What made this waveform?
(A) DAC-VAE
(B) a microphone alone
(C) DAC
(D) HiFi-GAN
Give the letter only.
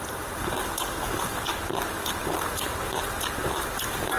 B